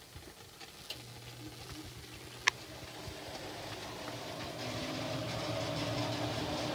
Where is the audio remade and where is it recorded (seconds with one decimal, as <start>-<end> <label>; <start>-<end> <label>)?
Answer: 0.0-6.7 recorded